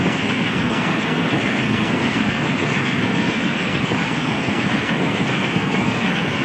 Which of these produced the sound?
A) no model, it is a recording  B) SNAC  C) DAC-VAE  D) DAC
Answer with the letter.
B